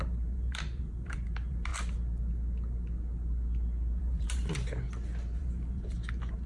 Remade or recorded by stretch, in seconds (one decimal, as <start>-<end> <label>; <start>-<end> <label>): 0.0-1.7 remade; 1.7-4.0 recorded; 4.0-4.4 remade; 4.4-5.4 recorded; 5.4-6.5 remade